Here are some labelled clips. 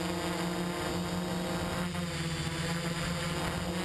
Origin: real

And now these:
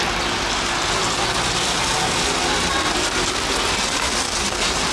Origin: real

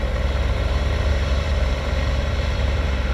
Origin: fake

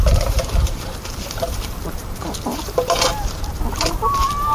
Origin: fake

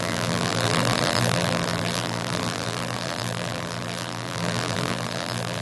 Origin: fake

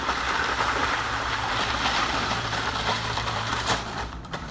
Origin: fake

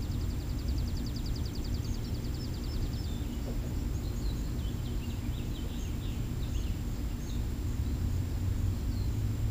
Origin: real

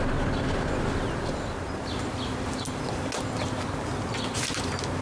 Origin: real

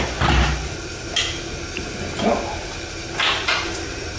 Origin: real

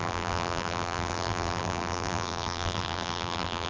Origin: fake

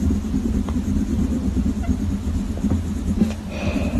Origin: real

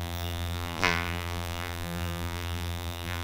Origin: fake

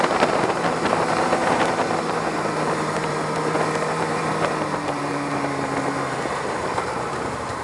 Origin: fake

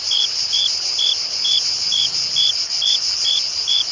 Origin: fake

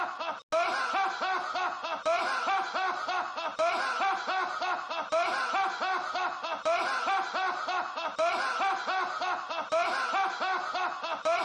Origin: real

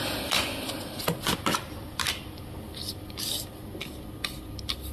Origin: real